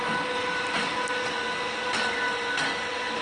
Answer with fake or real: real